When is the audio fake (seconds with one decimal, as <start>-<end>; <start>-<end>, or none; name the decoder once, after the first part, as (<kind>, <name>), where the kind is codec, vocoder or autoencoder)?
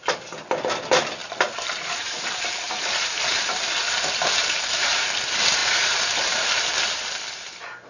1.2-5.1 (vocoder, BigVGAN v2); 5.6-6.5